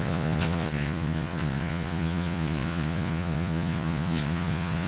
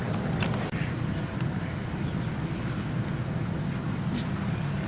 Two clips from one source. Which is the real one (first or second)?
second